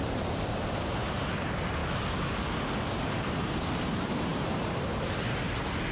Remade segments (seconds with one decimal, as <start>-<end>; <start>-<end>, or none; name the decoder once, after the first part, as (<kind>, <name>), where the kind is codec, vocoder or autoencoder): 0.0-1.8 (vocoder, BigVGAN v2); 3.2-5.9